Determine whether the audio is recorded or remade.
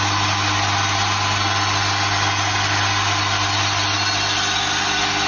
recorded